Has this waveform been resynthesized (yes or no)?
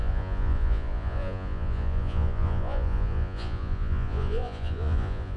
yes